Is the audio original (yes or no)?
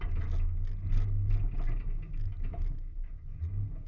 yes